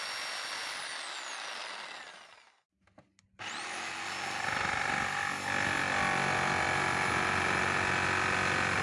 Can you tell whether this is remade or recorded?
recorded